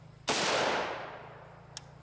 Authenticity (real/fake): real